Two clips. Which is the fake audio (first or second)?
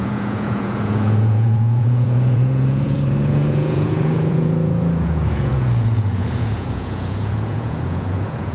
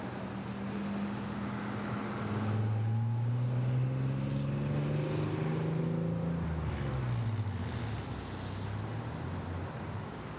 first